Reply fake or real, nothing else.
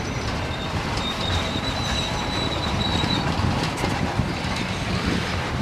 fake